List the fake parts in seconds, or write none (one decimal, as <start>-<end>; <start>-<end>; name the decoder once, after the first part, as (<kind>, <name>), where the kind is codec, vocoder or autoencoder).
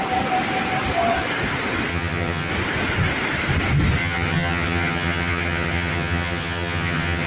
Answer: 1.9-2.5 (vocoder, HiFi-GAN); 4.0-7.3